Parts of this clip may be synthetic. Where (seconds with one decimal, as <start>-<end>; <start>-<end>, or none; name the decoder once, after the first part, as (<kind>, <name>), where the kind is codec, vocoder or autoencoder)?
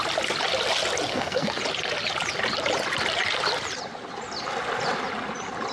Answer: 1.1-1.6 (codec, SNAC)